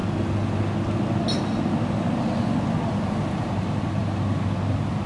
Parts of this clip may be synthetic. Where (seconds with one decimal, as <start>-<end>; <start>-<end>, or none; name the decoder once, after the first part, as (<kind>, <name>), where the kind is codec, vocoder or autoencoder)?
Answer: none